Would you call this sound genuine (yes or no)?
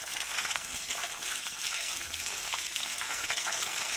no